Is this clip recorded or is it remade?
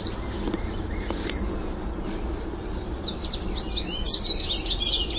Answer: recorded